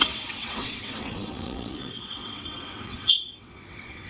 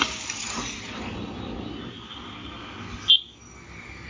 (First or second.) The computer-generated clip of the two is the first